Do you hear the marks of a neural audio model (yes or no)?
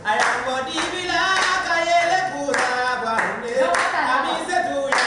no